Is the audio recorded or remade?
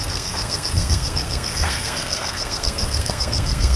remade